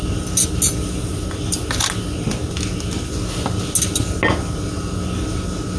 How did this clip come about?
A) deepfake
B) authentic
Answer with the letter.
B